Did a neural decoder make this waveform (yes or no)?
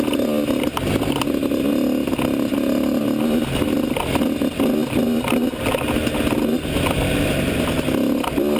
no